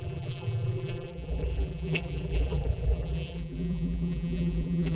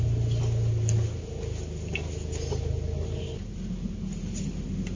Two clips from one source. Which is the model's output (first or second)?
first